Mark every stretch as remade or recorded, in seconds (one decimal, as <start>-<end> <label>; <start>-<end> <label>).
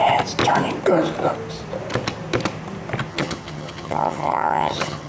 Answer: 0.0-3.1 recorded; 3.1-5.1 remade